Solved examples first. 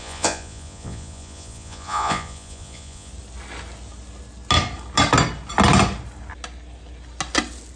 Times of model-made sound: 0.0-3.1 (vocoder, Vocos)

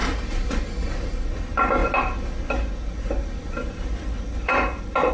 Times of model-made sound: none

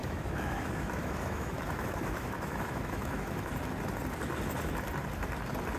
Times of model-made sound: 0.0-3.5 (autoencoder, DAC-VAE)

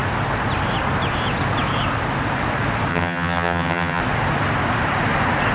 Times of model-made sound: 2.9-4.0 (vocoder, HiFi-GAN)

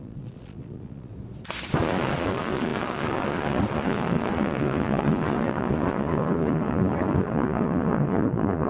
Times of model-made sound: 0.0-1.1 (vocoder, Vocos); 1.8-8.7